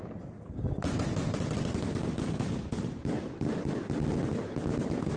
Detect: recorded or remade recorded